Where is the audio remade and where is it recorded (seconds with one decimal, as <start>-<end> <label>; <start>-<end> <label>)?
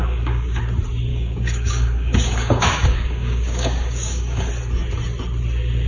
0.0-0.6 remade; 0.6-1.1 recorded; 1.1-4.5 remade; 4.5-5.9 recorded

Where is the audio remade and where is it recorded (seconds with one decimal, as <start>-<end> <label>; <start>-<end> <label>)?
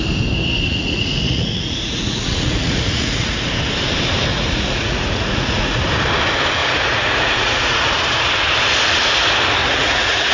0.0-0.7 recorded; 0.7-3.5 remade; 3.5-4.3 recorded; 4.3-5.8 remade; 5.8-6.6 recorded; 6.6-8.0 remade; 8.0-9.6 recorded; 9.6-10.3 remade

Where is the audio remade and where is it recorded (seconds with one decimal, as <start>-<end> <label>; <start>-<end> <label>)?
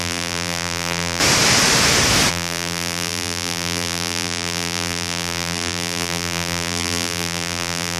0.0-1.2 remade; 1.2-2.3 recorded; 2.3-8.0 remade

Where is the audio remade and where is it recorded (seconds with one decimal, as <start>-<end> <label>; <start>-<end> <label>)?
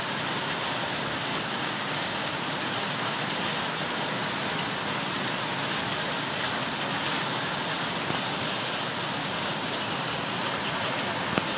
0.0-1.3 recorded; 1.3-2.3 remade; 2.3-9.2 recorded; 9.2-9.8 remade; 9.8-11.6 recorded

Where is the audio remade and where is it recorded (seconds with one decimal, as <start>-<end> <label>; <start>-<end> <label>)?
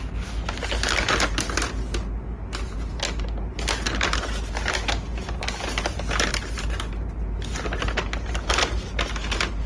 0.0-9.7 recorded